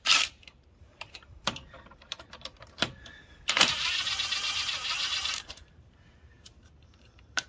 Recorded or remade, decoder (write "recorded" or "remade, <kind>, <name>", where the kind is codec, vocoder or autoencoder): remade, vocoder, BigVGAN v2